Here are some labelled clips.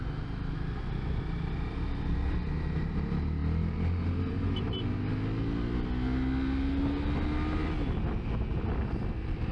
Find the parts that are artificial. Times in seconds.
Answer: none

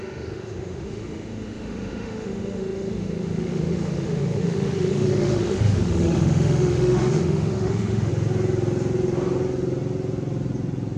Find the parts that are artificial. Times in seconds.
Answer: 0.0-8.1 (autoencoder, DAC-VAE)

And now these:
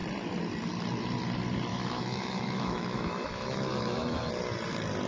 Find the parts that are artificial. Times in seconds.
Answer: 1.7-4.3 (autoencoder, DAC-VAE)